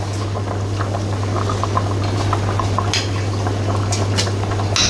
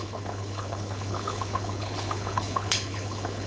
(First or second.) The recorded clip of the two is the first